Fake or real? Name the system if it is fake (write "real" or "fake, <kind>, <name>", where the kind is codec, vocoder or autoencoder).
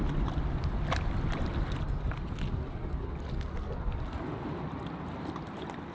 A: real